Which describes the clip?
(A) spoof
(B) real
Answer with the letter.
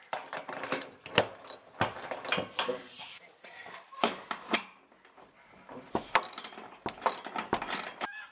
A